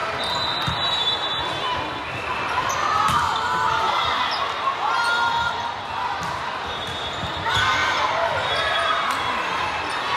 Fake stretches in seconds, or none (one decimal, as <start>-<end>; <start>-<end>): none